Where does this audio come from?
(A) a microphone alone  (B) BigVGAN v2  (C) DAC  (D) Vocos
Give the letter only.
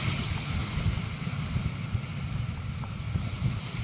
A